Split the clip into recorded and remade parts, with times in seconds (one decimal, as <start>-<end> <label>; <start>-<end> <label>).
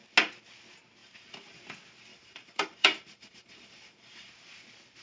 0.0-1.0 recorded; 1.0-1.6 remade; 1.6-2.1 recorded; 2.1-4.3 remade; 4.3-5.0 recorded